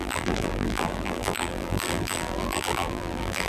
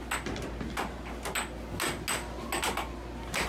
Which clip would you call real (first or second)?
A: second